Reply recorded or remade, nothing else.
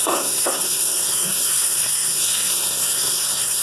remade